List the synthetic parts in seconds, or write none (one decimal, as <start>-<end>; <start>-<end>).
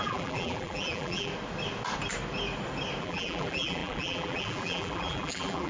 0.0-1.3; 3.0-5.7